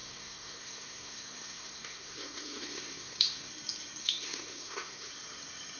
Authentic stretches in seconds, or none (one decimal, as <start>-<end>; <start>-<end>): 3.5-4.0; 5.1-5.8